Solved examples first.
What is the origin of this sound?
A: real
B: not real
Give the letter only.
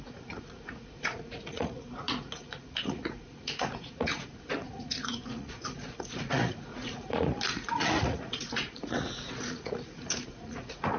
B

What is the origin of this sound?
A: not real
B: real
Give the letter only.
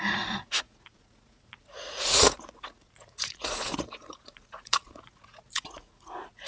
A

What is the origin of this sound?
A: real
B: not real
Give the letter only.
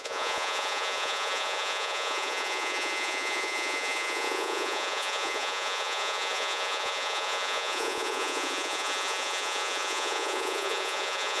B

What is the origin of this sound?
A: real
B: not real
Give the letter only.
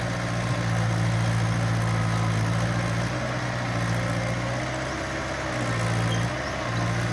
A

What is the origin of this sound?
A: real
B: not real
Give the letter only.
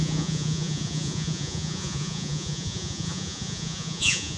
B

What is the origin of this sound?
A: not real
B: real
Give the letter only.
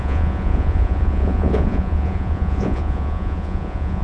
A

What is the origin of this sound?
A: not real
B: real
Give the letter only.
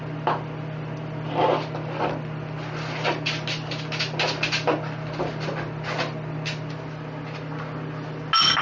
B